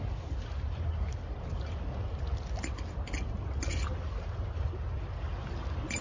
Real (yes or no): yes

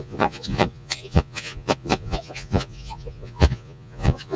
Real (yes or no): no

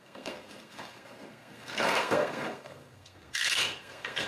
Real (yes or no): no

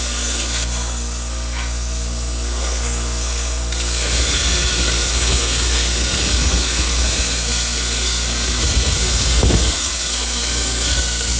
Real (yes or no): no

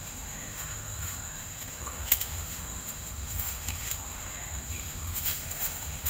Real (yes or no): no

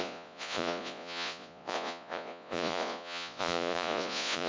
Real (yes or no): no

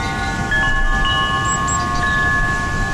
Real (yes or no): yes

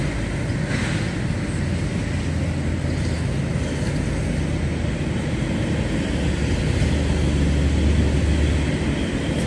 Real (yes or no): yes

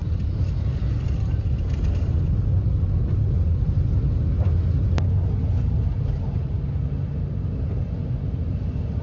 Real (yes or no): yes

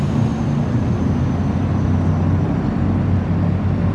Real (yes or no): yes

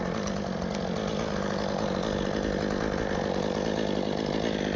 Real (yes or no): yes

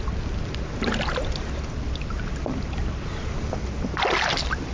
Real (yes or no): yes